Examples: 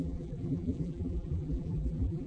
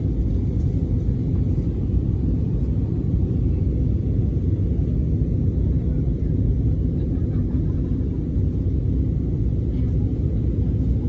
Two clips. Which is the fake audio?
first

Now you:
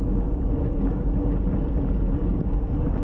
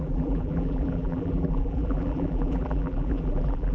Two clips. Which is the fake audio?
second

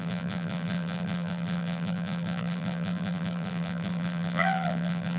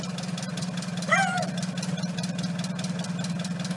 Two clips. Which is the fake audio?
first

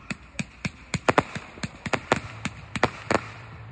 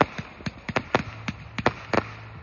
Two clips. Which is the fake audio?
first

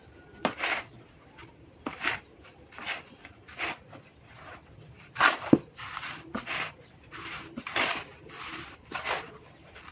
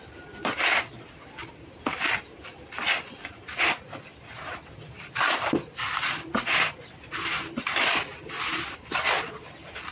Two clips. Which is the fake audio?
first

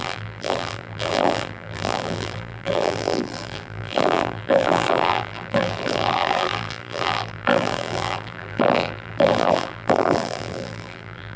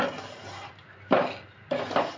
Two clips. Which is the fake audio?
first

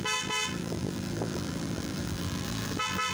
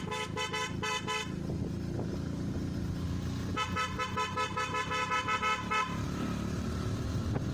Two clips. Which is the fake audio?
first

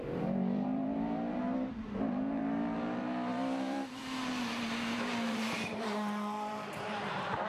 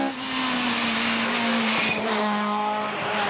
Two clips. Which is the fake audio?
first